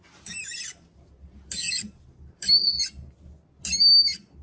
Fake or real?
real